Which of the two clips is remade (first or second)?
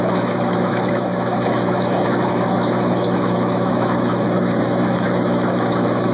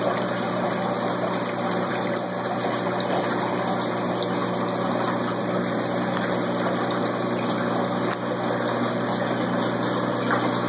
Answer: first